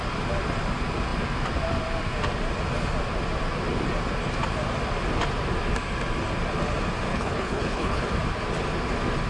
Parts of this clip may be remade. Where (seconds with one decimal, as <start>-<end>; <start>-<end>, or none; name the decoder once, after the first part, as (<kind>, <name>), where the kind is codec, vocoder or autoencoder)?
7.1-8.1 (codec, HILCodec)